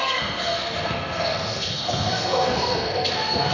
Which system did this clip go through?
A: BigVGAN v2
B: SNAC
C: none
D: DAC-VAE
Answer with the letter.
B